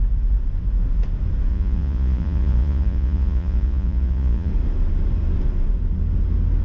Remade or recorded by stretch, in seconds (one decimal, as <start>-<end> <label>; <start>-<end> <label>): 0.0-1.5 recorded; 1.5-4.5 remade; 4.5-6.6 recorded